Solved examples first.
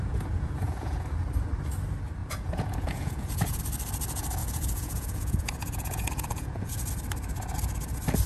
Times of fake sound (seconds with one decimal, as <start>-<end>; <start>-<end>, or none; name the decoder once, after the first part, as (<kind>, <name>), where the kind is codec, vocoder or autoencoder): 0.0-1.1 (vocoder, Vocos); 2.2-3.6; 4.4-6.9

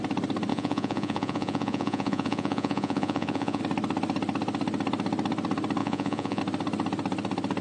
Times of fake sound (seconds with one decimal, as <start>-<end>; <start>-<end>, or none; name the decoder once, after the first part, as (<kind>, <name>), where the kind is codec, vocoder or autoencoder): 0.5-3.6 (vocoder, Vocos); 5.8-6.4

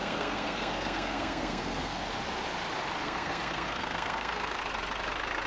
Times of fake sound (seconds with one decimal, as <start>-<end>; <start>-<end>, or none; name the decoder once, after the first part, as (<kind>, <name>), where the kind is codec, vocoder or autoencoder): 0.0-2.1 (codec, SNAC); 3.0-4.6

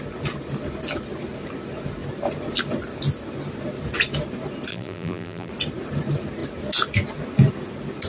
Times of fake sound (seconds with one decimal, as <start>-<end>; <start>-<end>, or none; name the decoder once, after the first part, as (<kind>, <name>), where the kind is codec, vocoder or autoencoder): 4.7-5.5 (vocoder, BigVGAN v2)

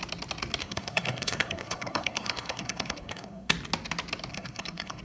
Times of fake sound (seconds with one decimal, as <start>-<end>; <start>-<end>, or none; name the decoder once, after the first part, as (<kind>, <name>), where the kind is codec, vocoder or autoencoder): 0.6-3.5 (codec, SNAC); 4.3-5.0

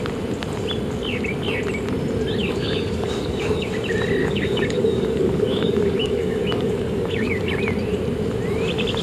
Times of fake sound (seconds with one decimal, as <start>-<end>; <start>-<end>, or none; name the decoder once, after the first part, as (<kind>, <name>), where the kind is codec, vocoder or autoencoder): 2.4-3.7 (codec, DAC); 4.2-7.5